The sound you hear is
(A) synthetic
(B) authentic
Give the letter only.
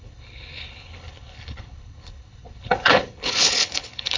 A